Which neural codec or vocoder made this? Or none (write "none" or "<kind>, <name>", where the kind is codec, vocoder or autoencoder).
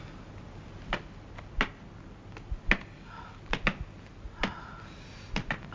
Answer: none